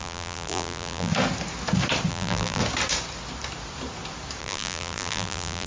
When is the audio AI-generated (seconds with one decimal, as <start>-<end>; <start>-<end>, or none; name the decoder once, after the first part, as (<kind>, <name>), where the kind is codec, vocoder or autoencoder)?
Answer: 0.0-1.1 (vocoder, BigVGAN v2); 2.1-2.6; 4.4-5.7